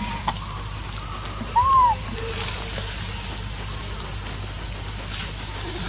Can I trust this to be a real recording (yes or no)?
yes